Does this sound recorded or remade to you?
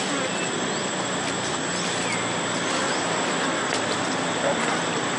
recorded